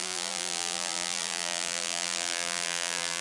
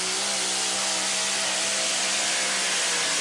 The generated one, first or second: first